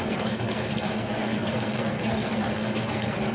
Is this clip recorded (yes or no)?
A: no